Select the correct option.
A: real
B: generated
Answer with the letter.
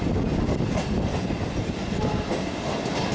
A